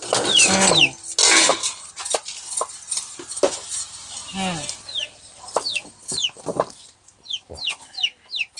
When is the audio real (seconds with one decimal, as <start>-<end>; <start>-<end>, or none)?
0.0-8.6